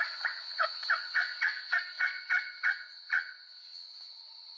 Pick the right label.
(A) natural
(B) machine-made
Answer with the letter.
B